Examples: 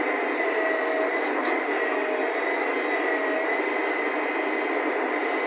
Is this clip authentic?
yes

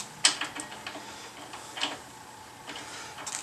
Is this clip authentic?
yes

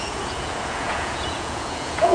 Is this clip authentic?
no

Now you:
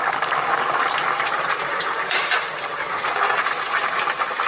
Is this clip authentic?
no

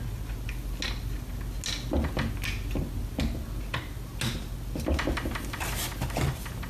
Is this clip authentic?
yes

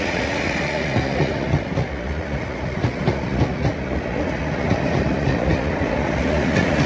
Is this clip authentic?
no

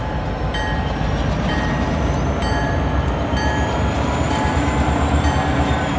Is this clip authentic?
no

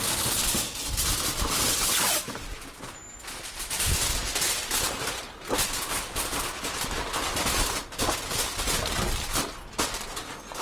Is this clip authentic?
yes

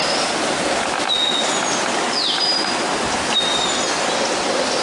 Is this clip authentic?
yes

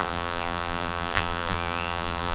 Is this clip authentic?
no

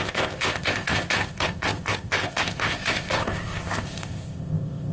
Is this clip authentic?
no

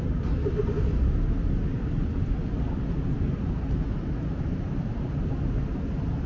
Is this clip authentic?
yes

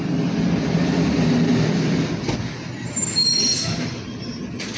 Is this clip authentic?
yes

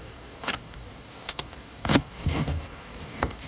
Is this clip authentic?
no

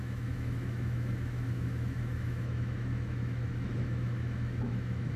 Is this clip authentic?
no